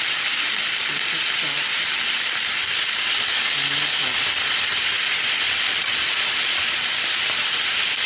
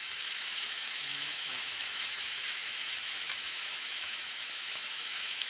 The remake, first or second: second